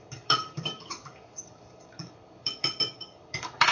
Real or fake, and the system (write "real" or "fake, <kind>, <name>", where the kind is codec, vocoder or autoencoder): fake, codec, DAC